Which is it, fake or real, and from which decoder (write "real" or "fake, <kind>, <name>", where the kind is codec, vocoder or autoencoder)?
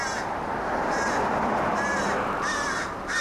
real